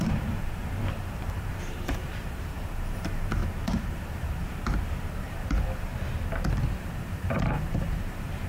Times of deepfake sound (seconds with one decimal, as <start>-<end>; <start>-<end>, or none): 0.0-3.4; 3.9-5.9; 6.6-8.5